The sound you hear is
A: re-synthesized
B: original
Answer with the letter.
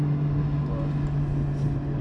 B